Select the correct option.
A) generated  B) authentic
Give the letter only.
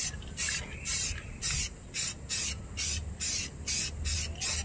B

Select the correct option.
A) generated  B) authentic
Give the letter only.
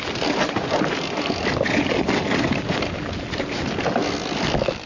B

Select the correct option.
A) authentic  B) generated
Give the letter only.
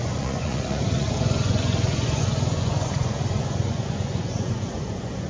B